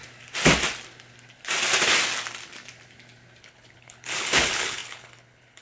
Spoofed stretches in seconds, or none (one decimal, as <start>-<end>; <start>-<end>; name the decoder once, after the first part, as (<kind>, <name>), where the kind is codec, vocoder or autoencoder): 3.4-5.6 (codec, HILCodec)